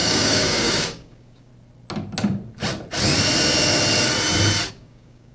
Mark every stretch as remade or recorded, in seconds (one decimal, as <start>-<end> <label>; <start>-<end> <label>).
0.0-1.5 remade; 1.5-4.7 recorded; 4.7-5.3 remade